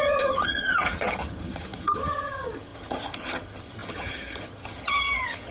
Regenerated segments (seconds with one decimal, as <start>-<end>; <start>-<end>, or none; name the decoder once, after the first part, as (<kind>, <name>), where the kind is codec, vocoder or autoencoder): 0.0-5.5 (vocoder, HiFi-GAN)